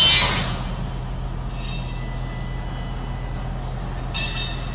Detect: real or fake real